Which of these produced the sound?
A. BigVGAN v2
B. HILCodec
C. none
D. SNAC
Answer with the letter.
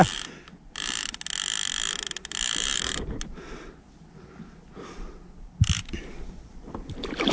C